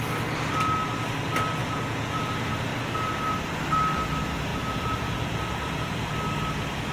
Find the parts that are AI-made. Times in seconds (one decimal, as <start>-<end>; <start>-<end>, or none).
1.6-2.3; 4.5-6.1

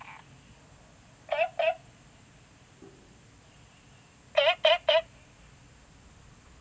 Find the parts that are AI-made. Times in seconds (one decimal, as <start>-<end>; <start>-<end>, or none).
none

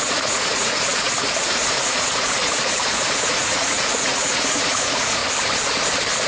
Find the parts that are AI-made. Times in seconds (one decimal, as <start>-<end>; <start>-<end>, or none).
0.0-5.2